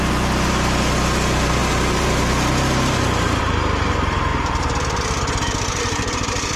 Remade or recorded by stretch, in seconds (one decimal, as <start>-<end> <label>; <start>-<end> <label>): 0.0-6.6 remade